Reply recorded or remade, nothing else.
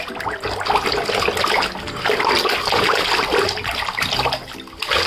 recorded